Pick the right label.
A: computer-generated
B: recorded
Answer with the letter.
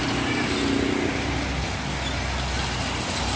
B